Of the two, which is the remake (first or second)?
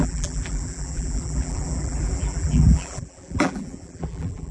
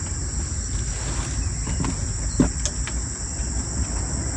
first